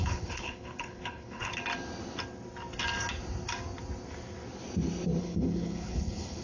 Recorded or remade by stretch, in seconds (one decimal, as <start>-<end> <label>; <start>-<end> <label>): 0.0-1.5 remade; 1.5-5.2 recorded; 5.2-6.4 remade